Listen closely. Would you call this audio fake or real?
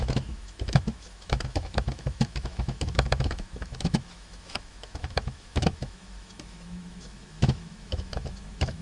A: fake